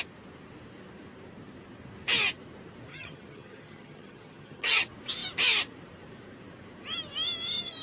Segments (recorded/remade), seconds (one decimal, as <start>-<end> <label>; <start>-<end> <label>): 0.0-2.9 recorded; 2.9-4.8 remade; 4.8-7.8 recorded